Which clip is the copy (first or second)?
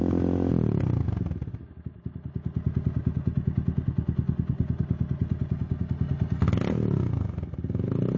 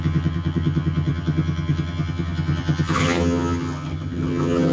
second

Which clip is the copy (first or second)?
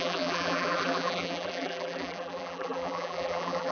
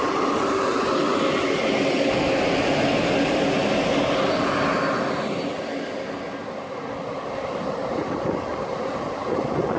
first